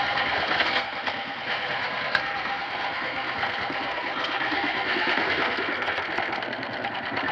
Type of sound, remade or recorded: remade